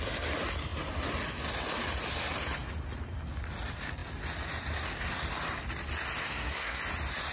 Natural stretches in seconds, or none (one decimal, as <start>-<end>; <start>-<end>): 0.0-6.2; 6.8-7.3